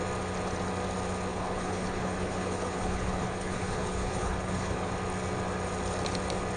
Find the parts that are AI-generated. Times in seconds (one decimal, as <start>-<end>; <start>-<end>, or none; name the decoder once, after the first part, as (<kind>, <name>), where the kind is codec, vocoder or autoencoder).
1.3-4.9 (codec, HILCodec)